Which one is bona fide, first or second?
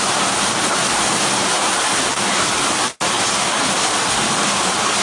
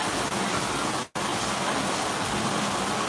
second